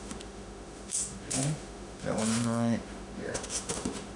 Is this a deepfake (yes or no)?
yes